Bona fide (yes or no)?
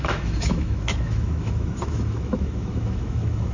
no